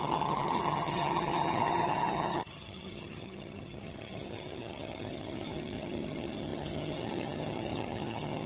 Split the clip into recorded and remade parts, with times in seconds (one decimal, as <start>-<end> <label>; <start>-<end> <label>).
0.0-8.5 remade